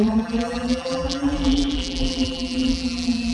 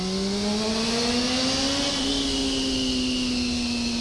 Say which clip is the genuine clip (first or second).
second